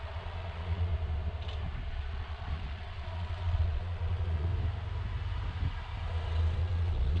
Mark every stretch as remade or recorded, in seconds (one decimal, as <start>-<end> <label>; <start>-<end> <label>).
0.0-0.9 remade; 0.9-1.9 recorded; 1.9-4.5 remade; 4.5-6.6 recorded; 6.6-7.2 remade